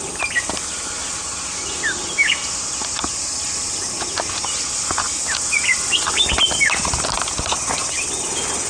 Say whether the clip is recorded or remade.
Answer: recorded